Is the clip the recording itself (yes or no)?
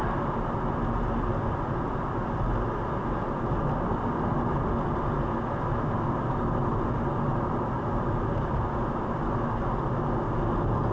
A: yes